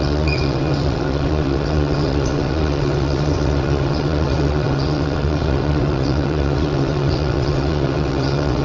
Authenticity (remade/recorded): remade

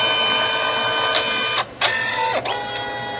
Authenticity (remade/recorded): recorded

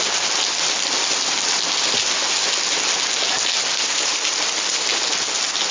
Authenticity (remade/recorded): recorded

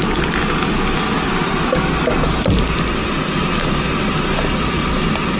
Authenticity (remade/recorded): recorded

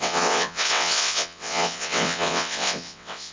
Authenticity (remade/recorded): remade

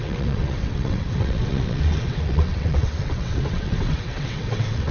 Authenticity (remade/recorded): remade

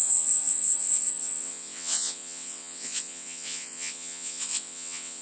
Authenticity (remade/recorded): remade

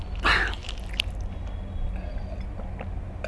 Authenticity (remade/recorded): recorded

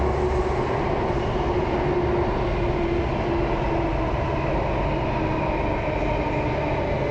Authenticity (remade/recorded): recorded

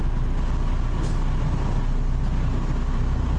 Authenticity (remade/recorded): recorded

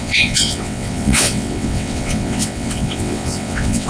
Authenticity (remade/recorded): remade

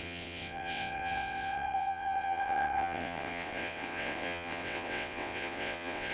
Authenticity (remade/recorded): remade